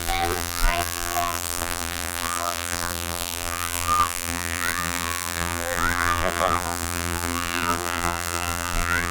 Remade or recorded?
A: remade